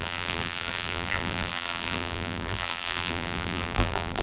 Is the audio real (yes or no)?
no